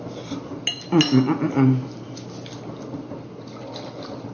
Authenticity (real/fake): real